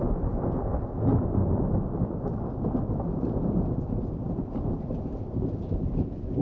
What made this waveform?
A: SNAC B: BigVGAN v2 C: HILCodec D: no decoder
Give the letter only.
B